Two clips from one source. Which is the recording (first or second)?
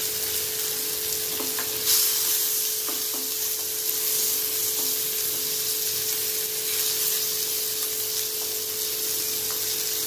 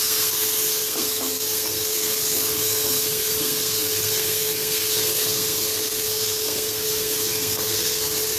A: first